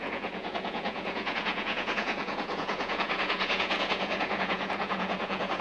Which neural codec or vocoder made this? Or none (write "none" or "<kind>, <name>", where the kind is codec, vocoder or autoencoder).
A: vocoder, Vocos